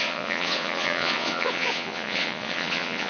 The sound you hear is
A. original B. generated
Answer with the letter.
B